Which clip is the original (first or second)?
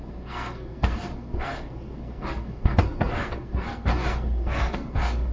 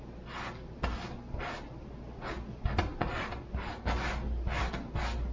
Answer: second